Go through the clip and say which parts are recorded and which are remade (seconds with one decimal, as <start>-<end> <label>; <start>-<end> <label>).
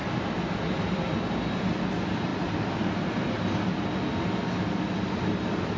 0.0-5.8 recorded